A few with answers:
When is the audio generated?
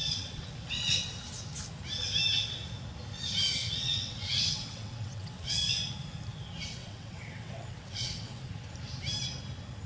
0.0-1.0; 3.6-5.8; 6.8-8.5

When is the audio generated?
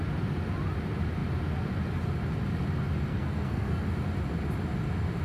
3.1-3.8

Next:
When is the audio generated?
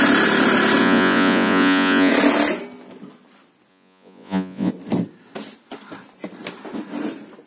0.8-2.1; 3.7-4.7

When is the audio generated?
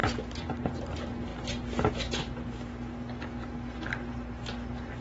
none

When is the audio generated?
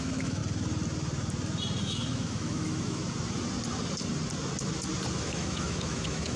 0.0-0.4; 1.8-3.0; 5.1-6.4